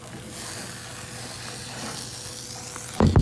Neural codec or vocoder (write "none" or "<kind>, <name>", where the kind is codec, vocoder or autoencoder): none